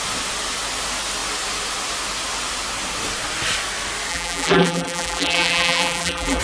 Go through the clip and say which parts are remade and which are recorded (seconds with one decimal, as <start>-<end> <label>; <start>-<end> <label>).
0.0-4.1 recorded; 4.1-6.4 remade